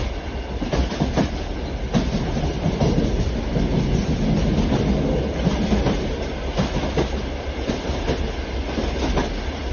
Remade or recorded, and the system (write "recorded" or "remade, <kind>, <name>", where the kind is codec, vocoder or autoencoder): recorded